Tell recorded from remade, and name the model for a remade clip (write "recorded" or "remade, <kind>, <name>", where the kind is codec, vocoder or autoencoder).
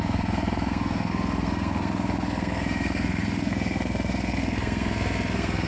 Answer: remade, codec, SNAC